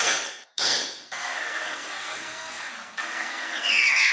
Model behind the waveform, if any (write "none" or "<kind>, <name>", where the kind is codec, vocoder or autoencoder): codec, SNAC